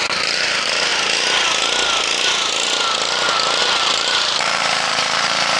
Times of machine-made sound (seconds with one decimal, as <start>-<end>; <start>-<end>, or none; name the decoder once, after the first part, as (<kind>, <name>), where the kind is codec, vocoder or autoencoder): 0.0-0.9 (vocoder, BigVGAN v2); 3.6-5.6

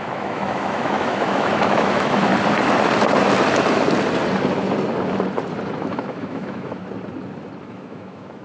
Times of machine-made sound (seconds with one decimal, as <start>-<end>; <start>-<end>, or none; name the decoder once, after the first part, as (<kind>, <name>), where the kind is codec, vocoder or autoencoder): 0.0-2.3 (autoencoder, DAC-VAE); 5.8-6.8; 7.6-8.4

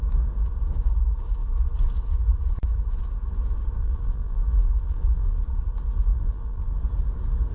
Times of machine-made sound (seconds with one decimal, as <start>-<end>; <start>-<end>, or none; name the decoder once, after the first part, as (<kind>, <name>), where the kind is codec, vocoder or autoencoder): 3.8-5.4 (vocoder, BigVGAN v2); 6.1-6.7

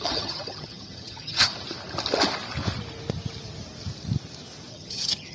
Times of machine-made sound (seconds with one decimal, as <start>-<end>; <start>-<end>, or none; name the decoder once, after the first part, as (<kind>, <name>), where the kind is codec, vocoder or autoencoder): 0.0-1.5 (vocoder, HiFi-GAN); 4.7-5.3

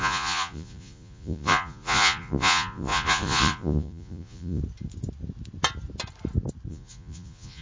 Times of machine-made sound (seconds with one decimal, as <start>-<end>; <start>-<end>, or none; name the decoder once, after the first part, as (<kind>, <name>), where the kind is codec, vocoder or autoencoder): 0.0-4.6 (vocoder, Vocos); 6.7-7.6

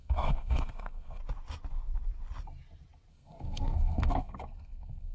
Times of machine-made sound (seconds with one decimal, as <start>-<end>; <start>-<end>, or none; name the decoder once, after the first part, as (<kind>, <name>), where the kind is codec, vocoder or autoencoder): 0.0-1.2 (codec, SNAC); 3.1-5.1